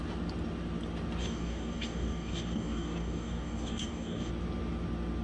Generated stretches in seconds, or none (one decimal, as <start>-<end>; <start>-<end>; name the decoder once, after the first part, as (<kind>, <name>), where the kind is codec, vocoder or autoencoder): 1.2-4.3 (codec, DAC)